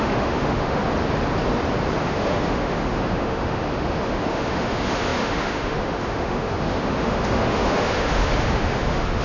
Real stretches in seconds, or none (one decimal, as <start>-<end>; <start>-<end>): 0.8-2.0